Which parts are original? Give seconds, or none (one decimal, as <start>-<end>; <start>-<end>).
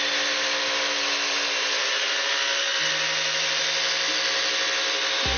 0.0-2.7; 3.6-5.4